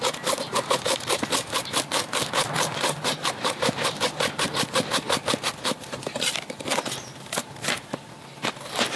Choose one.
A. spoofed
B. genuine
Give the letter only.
A